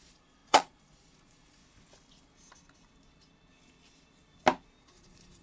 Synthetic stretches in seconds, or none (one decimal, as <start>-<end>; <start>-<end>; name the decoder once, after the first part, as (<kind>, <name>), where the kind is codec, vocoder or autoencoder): 0.0-1.6 (vocoder, Vocos); 4.8-5.4